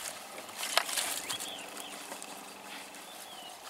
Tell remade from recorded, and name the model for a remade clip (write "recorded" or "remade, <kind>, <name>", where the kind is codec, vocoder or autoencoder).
recorded